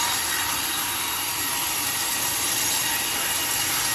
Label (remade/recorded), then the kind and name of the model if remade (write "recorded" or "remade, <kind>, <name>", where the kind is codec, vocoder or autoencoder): remade, vocoder, BigVGAN v2